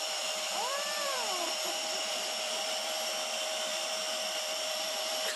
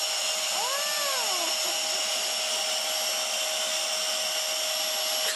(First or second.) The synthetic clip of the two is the first